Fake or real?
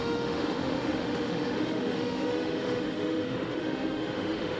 fake